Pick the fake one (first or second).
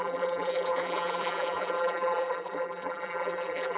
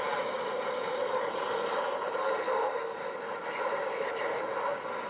first